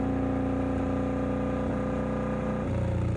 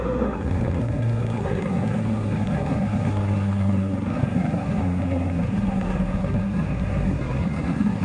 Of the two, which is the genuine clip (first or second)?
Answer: first